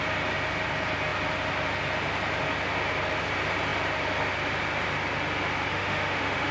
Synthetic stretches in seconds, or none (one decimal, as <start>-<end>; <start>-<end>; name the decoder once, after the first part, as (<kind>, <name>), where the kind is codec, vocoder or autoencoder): 5.7-6.5 (autoencoder, DAC-VAE)